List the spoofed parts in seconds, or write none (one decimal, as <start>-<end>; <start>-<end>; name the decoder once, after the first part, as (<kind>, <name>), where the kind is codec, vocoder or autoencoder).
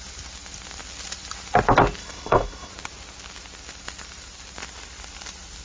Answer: 2.0-2.7 (codec, HILCodec)